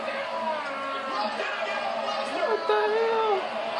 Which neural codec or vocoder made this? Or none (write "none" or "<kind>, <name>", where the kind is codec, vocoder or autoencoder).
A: none